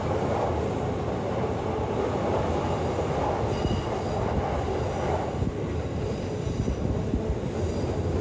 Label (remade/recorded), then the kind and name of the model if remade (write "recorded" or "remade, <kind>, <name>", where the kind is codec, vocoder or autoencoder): recorded